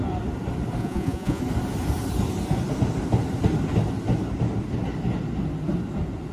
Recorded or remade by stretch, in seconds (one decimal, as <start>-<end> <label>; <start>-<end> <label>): 0.0-0.8 recorded; 0.8-1.4 remade; 1.4-6.3 recorded